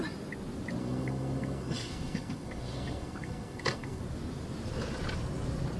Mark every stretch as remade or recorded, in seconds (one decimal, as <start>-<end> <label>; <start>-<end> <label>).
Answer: 0.0-0.8 recorded; 0.8-4.0 remade; 4.0-5.8 recorded